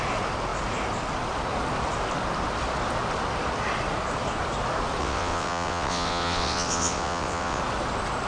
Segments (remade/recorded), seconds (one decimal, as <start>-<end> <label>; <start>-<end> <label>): 0.0-5.0 recorded; 5.0-7.6 remade; 7.6-8.3 recorded